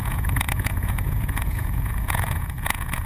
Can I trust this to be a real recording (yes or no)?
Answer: no